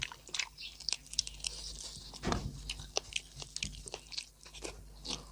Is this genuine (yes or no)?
yes